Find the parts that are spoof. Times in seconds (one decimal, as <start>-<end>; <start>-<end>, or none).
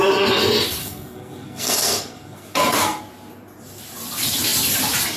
0.8-3.0